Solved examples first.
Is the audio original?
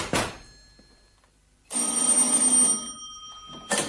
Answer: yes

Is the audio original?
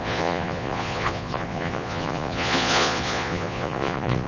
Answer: no